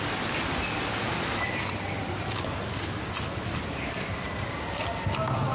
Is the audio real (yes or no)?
yes